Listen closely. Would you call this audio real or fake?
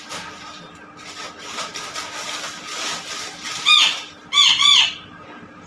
real